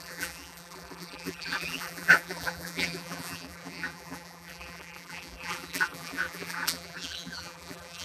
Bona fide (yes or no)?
no